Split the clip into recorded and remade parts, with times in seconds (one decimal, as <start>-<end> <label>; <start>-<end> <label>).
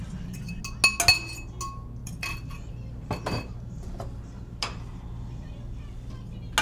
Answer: 0.0-0.6 remade; 0.6-2.0 recorded; 2.0-2.7 remade; 2.7-6.6 recorded